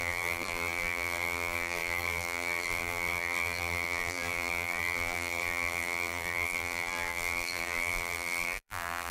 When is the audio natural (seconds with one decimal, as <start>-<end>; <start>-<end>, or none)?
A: none